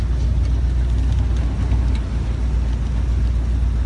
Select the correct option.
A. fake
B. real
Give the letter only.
B